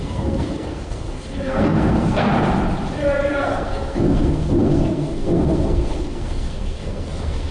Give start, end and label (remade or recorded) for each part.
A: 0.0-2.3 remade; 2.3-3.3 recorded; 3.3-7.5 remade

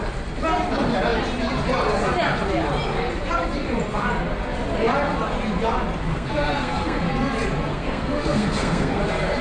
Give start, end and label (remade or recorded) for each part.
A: 0.0-6.1 recorded; 6.1-7.1 remade; 7.1-7.7 recorded; 7.7-9.0 remade; 9.0-9.4 recorded

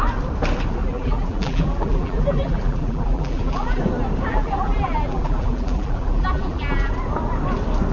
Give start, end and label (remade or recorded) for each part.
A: 0.0-0.8 recorded; 0.8-3.8 remade; 3.8-4.3 recorded; 4.3-6.9 remade; 6.9-7.9 recorded

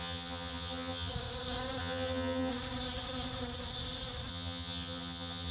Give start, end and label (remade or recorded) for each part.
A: 0.0-1.1 remade; 1.1-1.8 recorded; 1.8-2.5 remade; 2.5-4.3 recorded; 4.3-5.5 remade